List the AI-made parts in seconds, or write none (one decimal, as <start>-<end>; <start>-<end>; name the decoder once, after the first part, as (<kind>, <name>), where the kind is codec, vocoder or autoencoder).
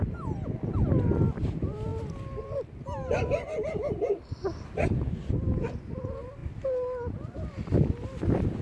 none